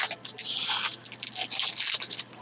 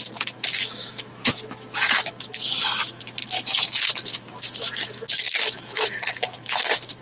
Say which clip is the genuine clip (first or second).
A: first